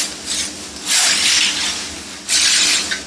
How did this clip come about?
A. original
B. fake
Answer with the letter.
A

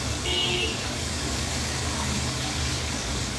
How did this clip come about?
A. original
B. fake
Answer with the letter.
B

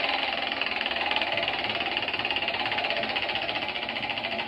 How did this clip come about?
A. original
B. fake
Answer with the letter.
A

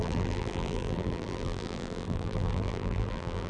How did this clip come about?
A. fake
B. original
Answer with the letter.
A